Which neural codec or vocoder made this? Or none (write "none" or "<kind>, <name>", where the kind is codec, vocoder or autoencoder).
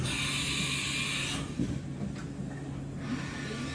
none